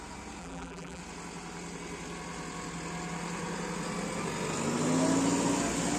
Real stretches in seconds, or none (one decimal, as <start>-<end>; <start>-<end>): 0.0-0.4; 1.0-6.0

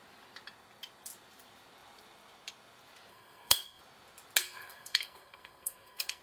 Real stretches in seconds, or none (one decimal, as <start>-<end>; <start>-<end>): 0.0-3.1; 3.8-4.4